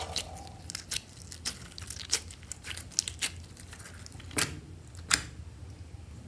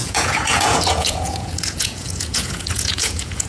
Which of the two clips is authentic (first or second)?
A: first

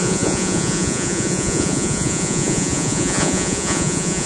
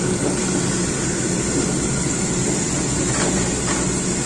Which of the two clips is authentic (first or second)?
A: second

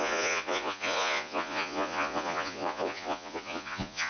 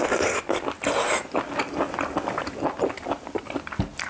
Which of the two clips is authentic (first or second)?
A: second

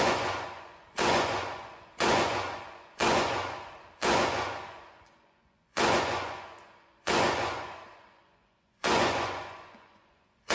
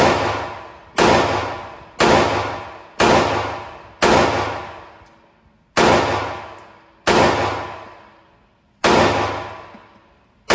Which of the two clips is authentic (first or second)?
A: second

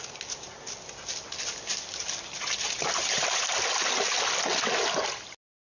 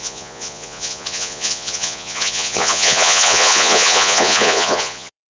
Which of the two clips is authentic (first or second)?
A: first